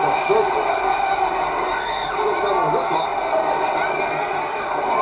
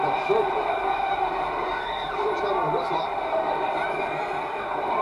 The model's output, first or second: second